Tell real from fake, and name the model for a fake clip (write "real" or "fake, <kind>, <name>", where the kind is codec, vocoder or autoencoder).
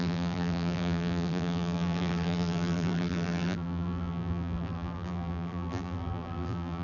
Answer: fake, vocoder, BigVGAN v2